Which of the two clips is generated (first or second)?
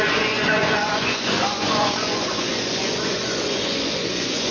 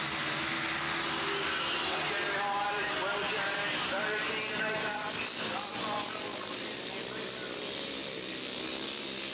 first